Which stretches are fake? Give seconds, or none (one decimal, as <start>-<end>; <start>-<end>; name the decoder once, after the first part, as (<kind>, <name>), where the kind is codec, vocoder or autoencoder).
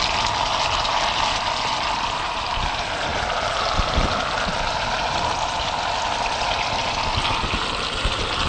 none